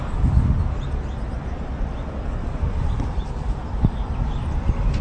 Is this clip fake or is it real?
real